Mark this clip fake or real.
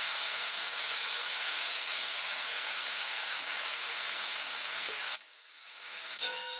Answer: fake